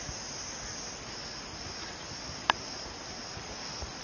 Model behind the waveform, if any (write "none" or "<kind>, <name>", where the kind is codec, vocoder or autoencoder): none